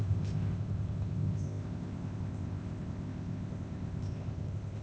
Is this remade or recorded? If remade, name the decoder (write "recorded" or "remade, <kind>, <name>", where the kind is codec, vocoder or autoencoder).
remade, codec, ZipCodec